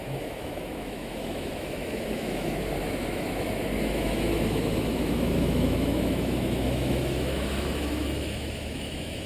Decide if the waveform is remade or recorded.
remade